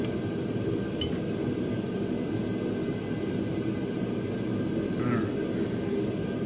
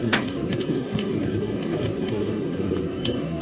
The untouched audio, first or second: first